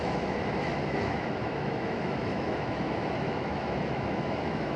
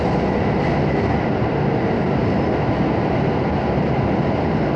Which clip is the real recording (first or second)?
second